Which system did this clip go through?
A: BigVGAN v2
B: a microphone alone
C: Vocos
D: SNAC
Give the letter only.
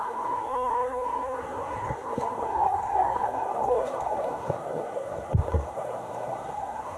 D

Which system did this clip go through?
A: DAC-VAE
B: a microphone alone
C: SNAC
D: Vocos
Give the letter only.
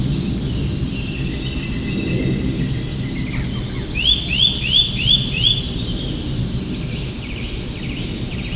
B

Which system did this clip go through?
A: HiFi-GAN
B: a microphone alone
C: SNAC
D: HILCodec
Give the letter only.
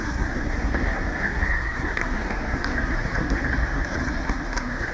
C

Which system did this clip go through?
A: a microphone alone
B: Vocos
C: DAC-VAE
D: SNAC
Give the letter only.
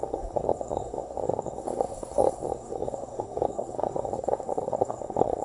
D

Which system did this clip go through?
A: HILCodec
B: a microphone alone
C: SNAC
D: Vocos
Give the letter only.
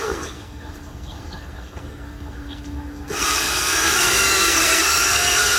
C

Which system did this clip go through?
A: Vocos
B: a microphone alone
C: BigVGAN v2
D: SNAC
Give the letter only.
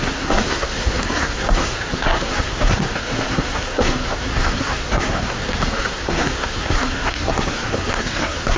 D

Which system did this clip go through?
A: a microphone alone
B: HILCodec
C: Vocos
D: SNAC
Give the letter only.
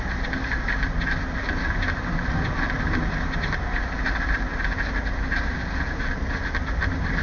A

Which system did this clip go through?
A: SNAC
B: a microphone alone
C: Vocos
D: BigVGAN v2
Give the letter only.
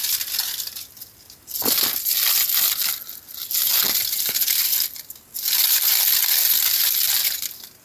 B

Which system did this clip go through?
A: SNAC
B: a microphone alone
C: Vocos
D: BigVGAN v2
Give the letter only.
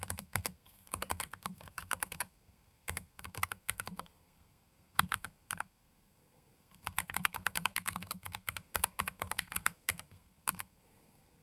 A